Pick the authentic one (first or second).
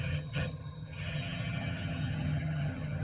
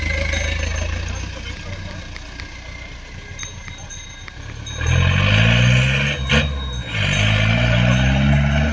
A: second